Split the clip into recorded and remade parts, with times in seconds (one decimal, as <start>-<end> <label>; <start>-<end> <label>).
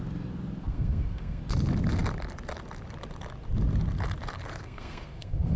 0.0-0.7 recorded; 0.7-1.4 remade; 1.4-4.6 recorded; 4.6-5.6 remade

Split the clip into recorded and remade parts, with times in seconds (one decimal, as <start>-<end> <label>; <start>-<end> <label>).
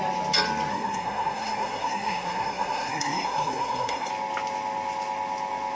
0.0-0.7 recorded; 0.7-4.1 remade; 4.1-5.7 recorded